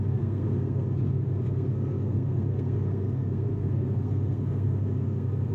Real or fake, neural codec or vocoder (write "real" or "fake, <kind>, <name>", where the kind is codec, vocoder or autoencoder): fake, codec, SNAC